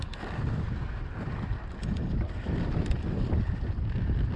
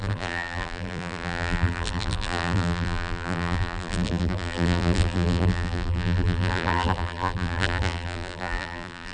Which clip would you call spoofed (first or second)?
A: second